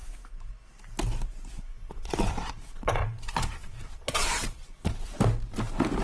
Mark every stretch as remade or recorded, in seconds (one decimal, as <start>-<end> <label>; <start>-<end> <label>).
0.0-1.7 recorded; 1.7-5.2 remade; 5.2-6.0 recorded